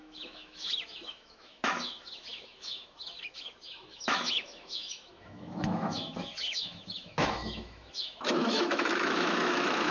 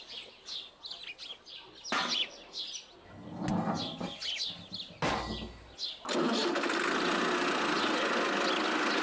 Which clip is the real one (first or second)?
second